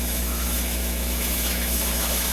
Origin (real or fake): fake